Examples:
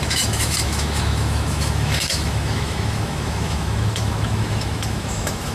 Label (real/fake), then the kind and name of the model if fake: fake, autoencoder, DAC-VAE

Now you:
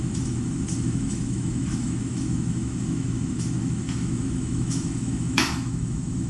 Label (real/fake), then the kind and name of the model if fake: fake, autoencoder, DAC-VAE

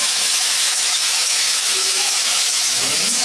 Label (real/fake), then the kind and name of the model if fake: fake, autoencoder, DAC-VAE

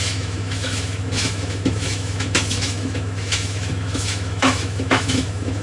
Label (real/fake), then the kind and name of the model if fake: fake, autoencoder, DAC-VAE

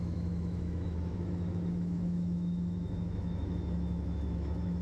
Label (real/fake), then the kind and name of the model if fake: fake, autoencoder, DAC-VAE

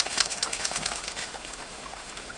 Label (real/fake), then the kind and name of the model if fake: fake, autoencoder, DAC-VAE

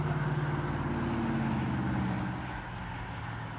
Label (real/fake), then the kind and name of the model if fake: real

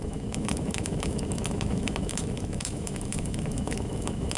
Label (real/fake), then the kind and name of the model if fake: fake, autoencoder, DAC-VAE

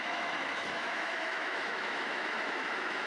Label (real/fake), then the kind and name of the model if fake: fake, autoencoder, DAC-VAE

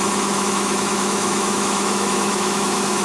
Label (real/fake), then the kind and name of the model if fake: fake, autoencoder, DAC-VAE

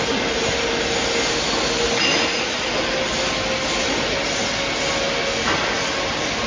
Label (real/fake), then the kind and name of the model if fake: real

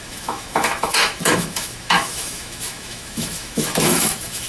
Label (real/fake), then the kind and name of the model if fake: fake, autoencoder, DAC-VAE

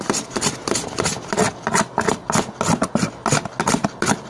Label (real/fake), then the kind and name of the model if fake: real